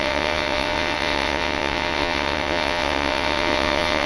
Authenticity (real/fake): fake